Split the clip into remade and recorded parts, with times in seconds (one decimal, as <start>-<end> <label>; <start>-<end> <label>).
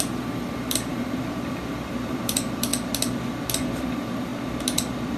0.0-2.7 remade; 2.7-3.8 recorded; 3.8-4.3 remade; 4.3-5.2 recorded